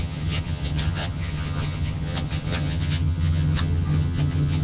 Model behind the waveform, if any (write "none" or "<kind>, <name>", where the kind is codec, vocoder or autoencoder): vocoder, HiFi-GAN